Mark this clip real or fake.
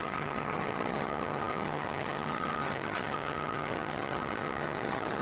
fake